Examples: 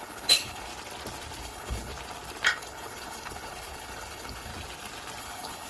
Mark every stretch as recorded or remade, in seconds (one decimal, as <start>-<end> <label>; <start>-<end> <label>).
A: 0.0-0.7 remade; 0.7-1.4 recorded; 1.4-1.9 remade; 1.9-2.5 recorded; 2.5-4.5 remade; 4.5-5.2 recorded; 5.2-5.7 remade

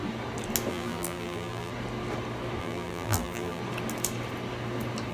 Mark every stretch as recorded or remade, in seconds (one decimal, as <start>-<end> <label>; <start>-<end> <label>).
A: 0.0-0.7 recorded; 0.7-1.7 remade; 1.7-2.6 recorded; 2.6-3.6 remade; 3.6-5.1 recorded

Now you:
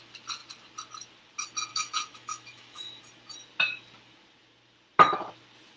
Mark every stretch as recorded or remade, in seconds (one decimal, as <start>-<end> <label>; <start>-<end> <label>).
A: 0.0-1.7 recorded; 1.7-3.0 remade; 3.0-5.8 recorded

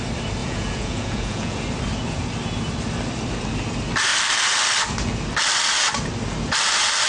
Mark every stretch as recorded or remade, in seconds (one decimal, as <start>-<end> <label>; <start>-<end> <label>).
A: 0.0-0.4 recorded; 0.4-1.6 remade; 1.6-7.1 recorded

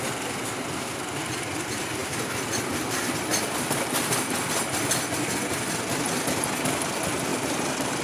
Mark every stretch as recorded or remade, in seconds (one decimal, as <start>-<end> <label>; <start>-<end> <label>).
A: 0.0-3.3 recorded; 3.3-4.4 remade; 4.4-7.3 recorded; 7.3-8.0 remade

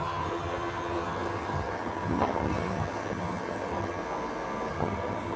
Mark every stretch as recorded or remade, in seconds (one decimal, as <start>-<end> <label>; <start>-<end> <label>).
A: 0.0-4.0 remade; 4.0-4.7 recorded; 4.7-5.4 remade